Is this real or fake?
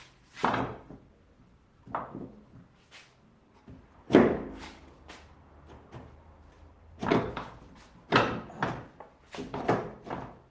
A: real